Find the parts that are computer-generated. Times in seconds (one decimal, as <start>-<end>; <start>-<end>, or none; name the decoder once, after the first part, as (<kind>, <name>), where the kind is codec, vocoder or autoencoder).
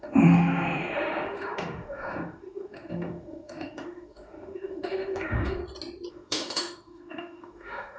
0.0-5.6 (autoencoder, DAC-VAE); 6.1-8.0